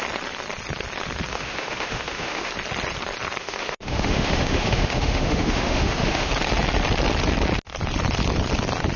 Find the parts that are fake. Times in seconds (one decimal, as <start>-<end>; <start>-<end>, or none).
1.3-2.5; 3.4-6.3